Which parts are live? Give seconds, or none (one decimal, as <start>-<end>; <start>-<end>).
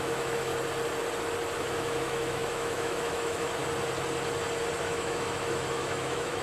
0.5-1.6; 3.6-4.8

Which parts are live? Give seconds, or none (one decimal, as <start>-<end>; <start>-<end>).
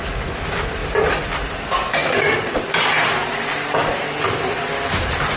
0.0-0.8; 1.4-2.0; 4.6-5.4